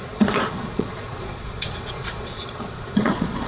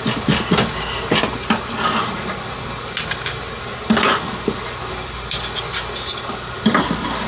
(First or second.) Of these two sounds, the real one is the second